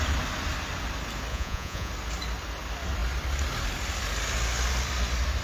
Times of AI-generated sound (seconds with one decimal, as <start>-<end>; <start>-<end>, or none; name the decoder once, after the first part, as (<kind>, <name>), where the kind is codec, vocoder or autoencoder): 1.3-1.9 (vocoder, Vocos)